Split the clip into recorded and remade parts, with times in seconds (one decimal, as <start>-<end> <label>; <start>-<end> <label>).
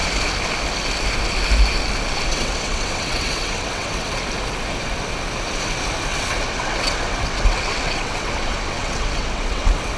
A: 0.0-2.3 recorded; 2.3-4.2 remade; 4.2-6.1 recorded; 6.1-10.0 remade